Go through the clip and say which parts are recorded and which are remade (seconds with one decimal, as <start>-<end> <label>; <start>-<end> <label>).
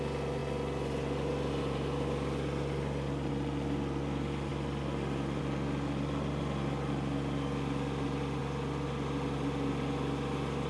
0.0-10.7 recorded